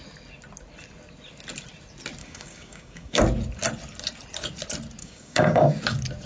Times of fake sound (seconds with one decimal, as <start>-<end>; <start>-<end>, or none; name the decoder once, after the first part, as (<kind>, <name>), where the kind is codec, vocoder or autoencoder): 2.2-3.2 (codec, DAC); 5.0-5.8